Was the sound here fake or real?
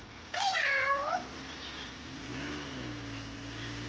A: real